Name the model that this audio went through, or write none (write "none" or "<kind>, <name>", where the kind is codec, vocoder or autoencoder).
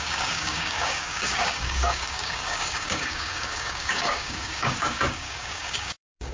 codec, DAC